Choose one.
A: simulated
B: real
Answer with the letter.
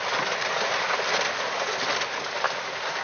B